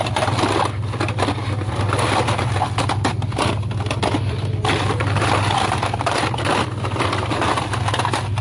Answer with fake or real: real